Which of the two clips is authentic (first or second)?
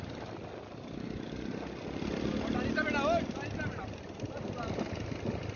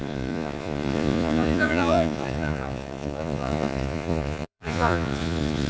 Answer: first